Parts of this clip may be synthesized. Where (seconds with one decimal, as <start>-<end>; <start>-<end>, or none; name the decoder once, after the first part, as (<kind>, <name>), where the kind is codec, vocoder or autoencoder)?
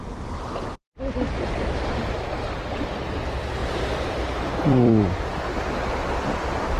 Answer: 0.8-2.4 (vocoder, BigVGAN v2); 3.6-5.7